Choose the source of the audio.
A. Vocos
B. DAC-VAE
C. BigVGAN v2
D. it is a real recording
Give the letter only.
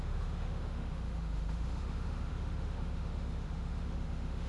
B